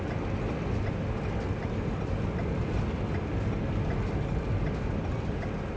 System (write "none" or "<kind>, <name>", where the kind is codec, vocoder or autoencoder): none